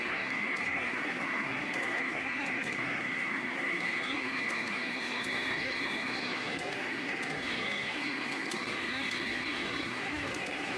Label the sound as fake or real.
fake